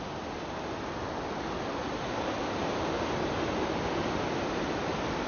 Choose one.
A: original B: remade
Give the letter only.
A